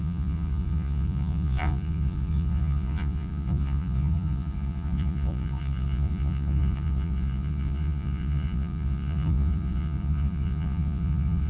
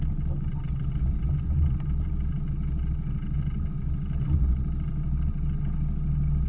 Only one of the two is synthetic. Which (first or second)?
first